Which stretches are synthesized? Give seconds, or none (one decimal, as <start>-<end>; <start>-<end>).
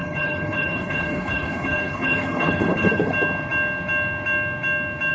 0.0-3.1